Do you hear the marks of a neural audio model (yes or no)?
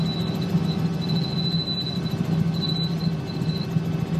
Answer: no